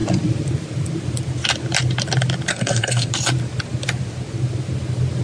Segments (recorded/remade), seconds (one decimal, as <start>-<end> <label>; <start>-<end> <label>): 0.0-2.5 recorded; 2.5-3.1 remade; 3.1-5.2 recorded

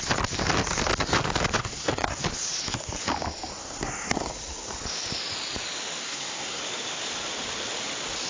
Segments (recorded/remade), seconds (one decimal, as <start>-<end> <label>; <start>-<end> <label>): 0.0-1.6 recorded; 1.6-2.2 remade; 2.2-3.6 recorded; 3.6-4.3 remade; 4.3-6.0 recorded; 6.0-6.6 remade; 6.6-8.3 recorded

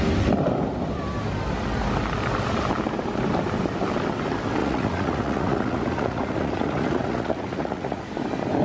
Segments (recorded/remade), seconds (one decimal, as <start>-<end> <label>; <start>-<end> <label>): 0.0-4.6 recorded; 4.6-8.0 remade; 8.0-8.6 recorded

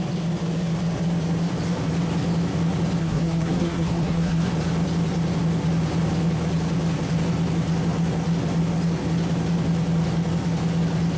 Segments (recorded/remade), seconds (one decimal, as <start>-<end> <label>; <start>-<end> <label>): 0.0-3.0 recorded; 3.0-4.5 remade; 4.5-11.2 recorded

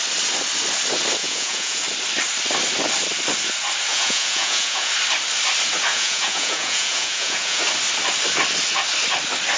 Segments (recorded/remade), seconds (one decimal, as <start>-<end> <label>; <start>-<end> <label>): 0.0-1.2 recorded; 1.2-1.8 remade; 1.8-3.9 recorded; 3.9-4.9 remade; 4.9-5.9 recorded; 5.9-7.6 remade; 7.6-9.6 recorded

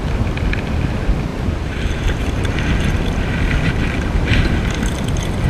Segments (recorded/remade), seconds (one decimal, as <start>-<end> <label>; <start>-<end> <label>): 0.0-1.3 recorded; 1.3-2.6 remade; 2.6-5.5 recorded